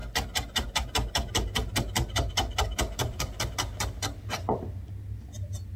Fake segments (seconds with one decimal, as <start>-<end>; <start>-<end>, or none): none

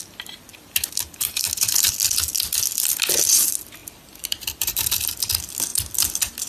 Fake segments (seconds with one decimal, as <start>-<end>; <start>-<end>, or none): 0.5-1.9; 3.8-5.1; 5.7-6.5

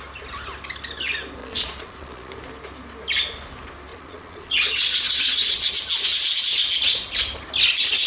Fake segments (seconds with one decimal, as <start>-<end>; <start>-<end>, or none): 1.4-2.3; 3.9-5.7

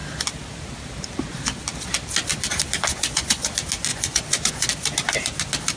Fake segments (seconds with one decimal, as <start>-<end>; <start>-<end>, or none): 2.9-3.5; 3.9-4.7

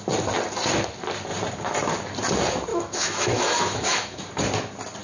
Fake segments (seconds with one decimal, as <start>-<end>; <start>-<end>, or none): 2.7-4.2

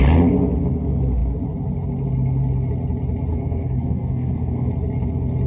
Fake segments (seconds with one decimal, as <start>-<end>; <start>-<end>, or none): 3.3-4.7